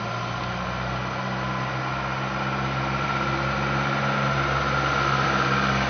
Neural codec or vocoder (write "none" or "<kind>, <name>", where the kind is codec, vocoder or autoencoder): none